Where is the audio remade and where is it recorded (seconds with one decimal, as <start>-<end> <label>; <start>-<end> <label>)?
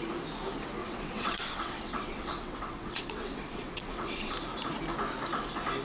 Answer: 0.0-0.8 recorded; 0.8-4.3 remade; 4.3-5.8 recorded